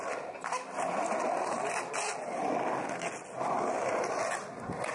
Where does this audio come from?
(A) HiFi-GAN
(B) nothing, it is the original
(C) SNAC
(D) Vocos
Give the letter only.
B